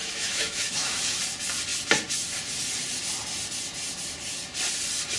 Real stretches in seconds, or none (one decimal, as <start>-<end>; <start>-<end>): 1.2-5.2